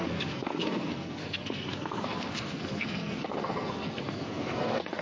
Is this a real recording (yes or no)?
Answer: no